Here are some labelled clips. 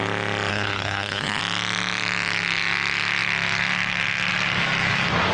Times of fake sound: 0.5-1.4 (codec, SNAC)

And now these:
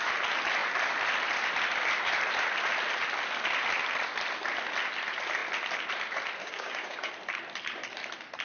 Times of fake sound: 6.4-7.1 (codec, DAC)